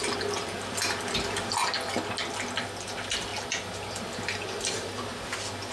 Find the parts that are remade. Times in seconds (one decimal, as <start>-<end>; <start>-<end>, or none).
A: 0.0-1.6; 2.9-3.3; 4.0-5.1